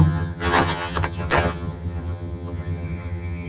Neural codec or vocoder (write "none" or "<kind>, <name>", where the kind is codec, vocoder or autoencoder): vocoder, HiFi-GAN